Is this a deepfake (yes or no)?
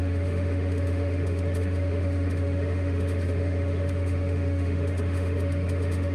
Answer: yes